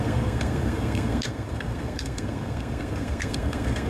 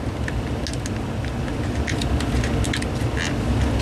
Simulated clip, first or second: first